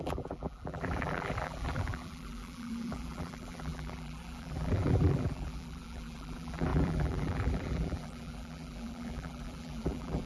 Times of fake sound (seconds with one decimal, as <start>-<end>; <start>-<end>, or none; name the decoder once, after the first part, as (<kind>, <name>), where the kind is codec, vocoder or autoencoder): 0.0-10.3 (vocoder, BigVGAN v2)